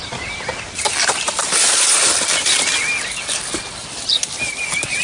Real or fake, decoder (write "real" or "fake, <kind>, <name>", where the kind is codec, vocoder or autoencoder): real